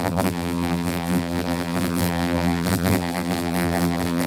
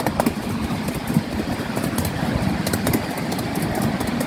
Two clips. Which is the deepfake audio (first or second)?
first